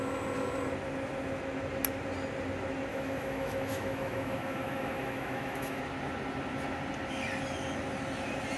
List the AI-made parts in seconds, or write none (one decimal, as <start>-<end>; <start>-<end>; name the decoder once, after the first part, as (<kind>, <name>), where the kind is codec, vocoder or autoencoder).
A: 2.9-5.8 (autoencoder, DAC-VAE)